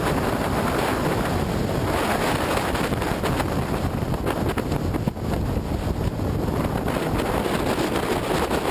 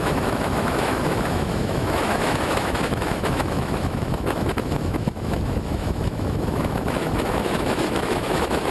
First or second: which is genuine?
first